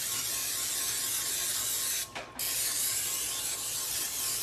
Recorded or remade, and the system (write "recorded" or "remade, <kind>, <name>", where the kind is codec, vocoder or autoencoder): recorded